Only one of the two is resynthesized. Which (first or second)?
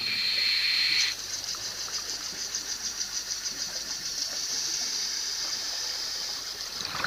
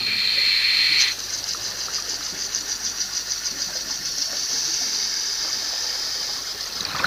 first